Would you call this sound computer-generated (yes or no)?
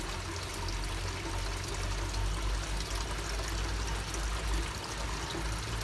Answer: no